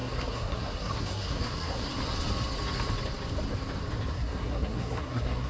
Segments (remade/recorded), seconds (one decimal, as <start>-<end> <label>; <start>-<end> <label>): 0.0-1.9 remade; 1.9-4.1 recorded; 4.1-5.5 remade

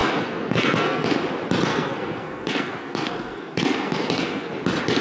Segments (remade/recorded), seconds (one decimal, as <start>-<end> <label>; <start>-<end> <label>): 0.0-1.1 remade; 1.1-1.7 recorded; 1.7-4.5 remade; 4.5-5.0 recorded

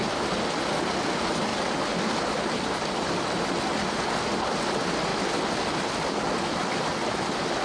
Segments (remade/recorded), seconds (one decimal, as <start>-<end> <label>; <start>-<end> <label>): 0.0-7.6 recorded

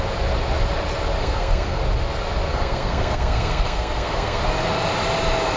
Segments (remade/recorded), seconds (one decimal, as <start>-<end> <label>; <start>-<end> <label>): 0.0-1.2 recorded; 1.2-1.8 remade; 1.8-2.5 recorded; 2.5-4.4 remade; 4.4-5.6 recorded

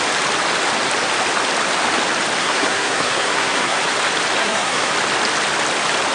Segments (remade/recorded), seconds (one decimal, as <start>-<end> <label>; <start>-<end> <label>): 0.0-2.4 recorded; 2.4-3.8 remade; 3.8-4.4 recorded; 4.4-4.9 remade; 4.9-6.1 recorded

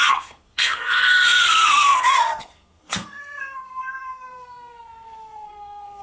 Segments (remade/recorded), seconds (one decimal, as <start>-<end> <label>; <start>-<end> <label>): 0.0-6.0 remade